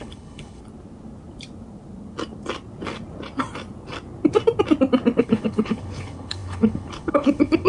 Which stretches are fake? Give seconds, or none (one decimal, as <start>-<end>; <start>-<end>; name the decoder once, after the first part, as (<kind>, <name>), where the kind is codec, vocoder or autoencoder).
0.0-0.6 (codec, HILCodec); 5.2-7.7